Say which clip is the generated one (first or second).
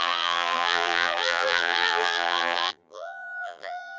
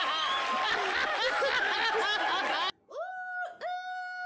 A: first